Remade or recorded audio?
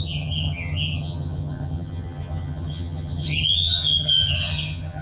remade